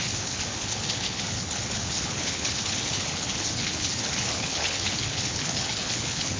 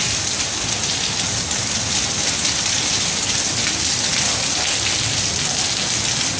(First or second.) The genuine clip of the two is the second